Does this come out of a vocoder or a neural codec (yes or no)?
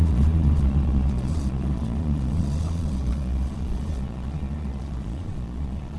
yes